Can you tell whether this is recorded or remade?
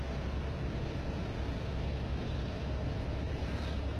recorded